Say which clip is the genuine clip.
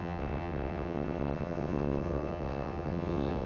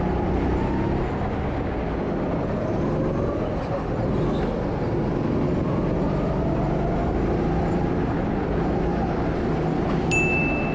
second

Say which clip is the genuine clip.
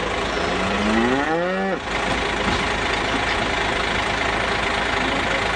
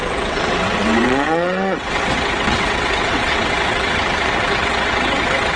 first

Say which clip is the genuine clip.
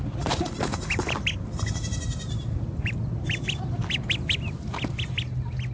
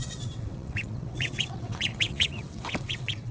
first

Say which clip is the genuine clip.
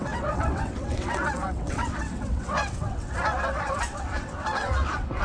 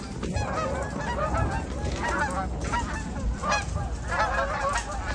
second